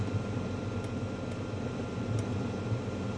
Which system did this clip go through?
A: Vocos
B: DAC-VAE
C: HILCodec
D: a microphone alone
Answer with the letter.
D